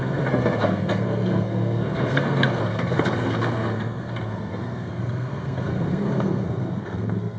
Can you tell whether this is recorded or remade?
remade